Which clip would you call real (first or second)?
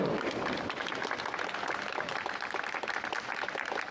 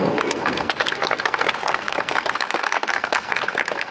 first